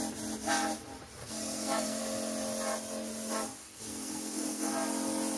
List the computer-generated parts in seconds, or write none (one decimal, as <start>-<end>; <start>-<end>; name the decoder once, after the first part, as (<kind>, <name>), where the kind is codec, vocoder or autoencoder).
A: 1.2-2.0 (codec, SNAC); 3.6-4.7